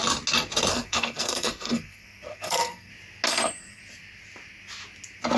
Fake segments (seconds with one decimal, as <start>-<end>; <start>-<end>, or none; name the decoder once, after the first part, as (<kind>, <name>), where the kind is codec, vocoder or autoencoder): 0.7-2.9 (codec, SNAC); 3.3-3.8